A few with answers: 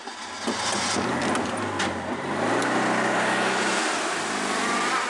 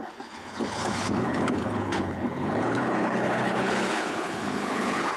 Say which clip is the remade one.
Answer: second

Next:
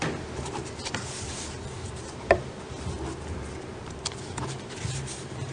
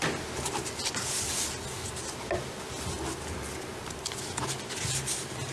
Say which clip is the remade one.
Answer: first